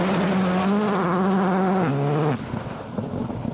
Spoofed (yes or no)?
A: no